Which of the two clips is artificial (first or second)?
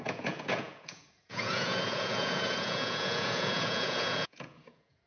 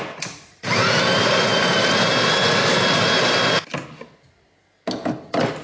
first